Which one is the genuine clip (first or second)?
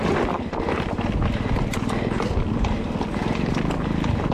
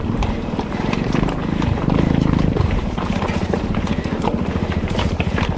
first